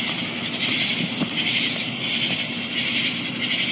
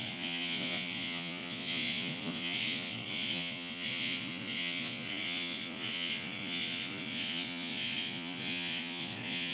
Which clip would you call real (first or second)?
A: first